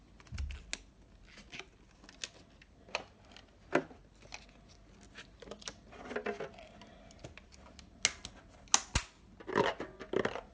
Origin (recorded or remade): recorded